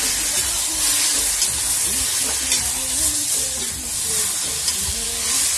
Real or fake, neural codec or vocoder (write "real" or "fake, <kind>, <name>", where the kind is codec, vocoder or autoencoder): real